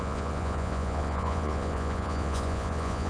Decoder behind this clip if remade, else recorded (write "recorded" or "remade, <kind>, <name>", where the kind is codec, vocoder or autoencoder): remade, vocoder, Vocos